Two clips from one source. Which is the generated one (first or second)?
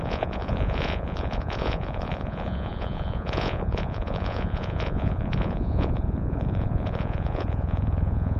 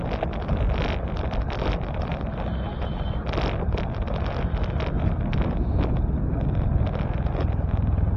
first